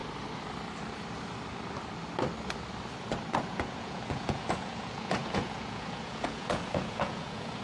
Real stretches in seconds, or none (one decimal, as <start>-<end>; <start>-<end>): 0.0-3.5